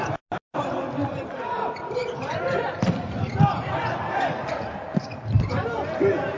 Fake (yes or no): no